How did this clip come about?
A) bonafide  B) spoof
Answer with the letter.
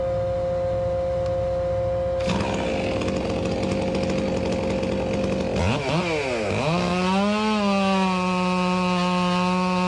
A